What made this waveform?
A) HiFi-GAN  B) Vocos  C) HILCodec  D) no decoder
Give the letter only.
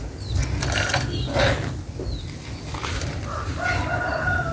D